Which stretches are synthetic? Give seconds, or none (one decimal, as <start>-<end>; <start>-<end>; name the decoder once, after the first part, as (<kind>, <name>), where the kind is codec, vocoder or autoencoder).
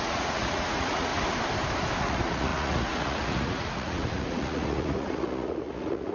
0.0-1.1 (vocoder, Vocos); 2.0-6.1